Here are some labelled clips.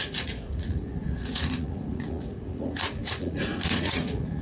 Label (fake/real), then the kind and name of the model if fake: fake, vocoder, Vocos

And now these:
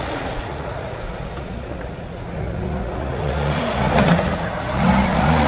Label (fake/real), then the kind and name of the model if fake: fake, vocoder, Vocos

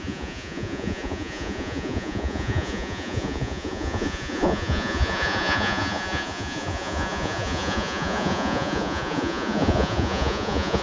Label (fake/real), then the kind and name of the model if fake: fake, vocoder, Vocos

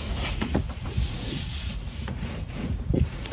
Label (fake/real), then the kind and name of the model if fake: fake, vocoder, Vocos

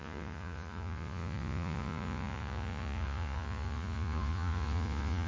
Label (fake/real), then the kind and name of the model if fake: fake, vocoder, Vocos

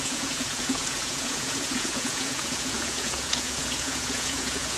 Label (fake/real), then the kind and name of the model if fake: fake, vocoder, Vocos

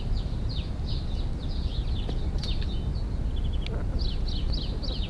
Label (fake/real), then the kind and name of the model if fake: real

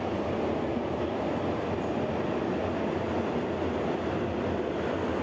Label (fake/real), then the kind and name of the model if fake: real